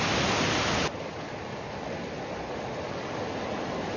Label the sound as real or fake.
real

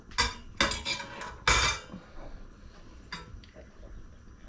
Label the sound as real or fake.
real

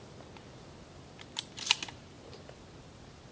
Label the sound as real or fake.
real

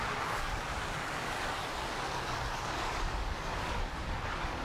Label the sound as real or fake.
fake